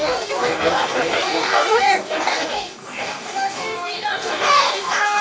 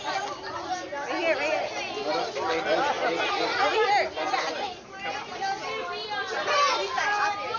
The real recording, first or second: second